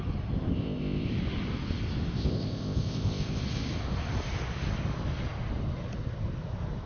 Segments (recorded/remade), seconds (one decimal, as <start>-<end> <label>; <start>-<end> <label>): 0.0-0.5 recorded; 0.5-1.1 remade; 1.1-2.2 recorded; 2.2-3.4 remade; 3.4-6.9 recorded